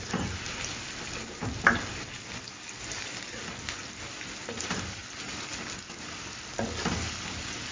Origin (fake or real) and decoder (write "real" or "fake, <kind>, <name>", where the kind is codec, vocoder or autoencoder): real